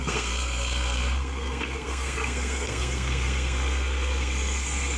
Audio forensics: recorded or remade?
remade